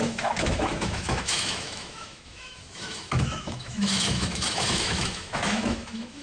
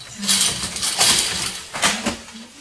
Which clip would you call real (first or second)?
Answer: second